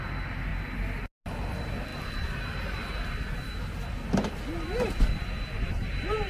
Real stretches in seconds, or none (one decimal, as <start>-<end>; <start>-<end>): 0.0-6.3